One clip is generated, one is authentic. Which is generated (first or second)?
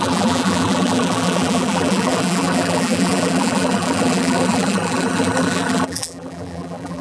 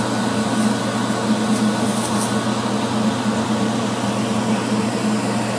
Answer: first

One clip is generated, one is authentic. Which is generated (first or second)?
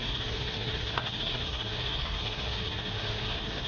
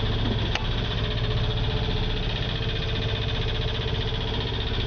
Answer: first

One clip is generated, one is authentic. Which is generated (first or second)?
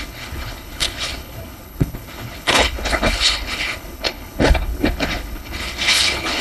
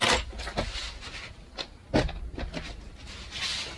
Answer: first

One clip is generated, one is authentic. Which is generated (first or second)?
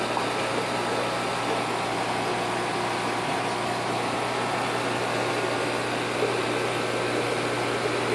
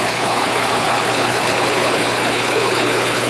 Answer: second